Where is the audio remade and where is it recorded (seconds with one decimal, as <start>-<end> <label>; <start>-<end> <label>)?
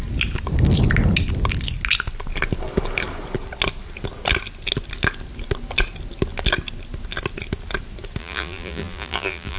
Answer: 0.0-8.2 recorded; 8.2-9.6 remade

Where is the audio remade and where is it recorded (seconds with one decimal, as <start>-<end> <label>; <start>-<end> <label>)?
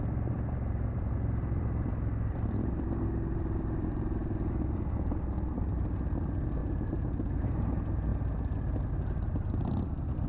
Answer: 0.0-6.6 remade; 6.6-7.3 recorded; 7.3-8.1 remade; 8.1-8.9 recorded; 8.9-10.3 remade